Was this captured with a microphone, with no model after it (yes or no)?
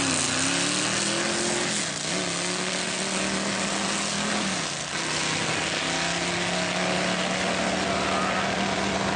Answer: yes